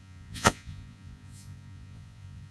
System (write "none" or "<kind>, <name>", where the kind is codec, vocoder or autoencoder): vocoder, Vocos